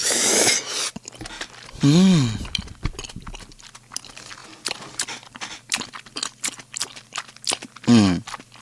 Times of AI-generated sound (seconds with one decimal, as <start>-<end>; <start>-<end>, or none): 0.0-0.5